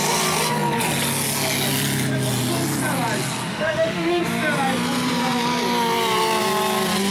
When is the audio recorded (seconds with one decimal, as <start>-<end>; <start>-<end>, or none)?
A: 0.0-3.5; 4.2-7.1